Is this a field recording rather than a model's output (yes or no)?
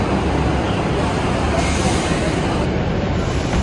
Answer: yes